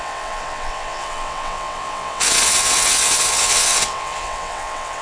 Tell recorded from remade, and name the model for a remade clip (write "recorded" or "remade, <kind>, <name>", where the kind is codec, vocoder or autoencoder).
remade, vocoder, WaveNeXt